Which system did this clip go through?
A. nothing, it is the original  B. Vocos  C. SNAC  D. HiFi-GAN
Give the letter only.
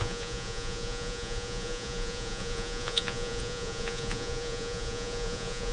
B